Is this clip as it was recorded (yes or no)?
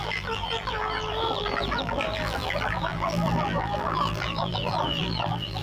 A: no